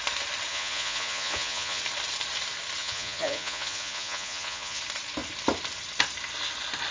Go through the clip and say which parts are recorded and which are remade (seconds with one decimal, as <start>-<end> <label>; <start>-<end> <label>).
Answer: 0.0-0.5 recorded; 0.5-1.8 remade; 1.8-2.8 recorded; 2.8-4.8 remade; 4.8-6.9 recorded